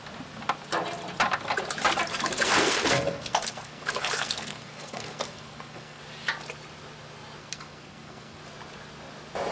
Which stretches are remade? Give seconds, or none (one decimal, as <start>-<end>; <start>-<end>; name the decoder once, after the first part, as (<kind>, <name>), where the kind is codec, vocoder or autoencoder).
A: 2.1-6.0 (codec, SNAC); 7.4-8.4